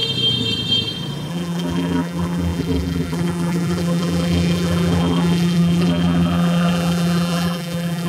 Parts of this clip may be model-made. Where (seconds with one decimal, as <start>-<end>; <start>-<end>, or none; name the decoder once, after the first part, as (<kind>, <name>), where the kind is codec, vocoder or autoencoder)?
1.3-8.1 (vocoder, BigVGAN v2)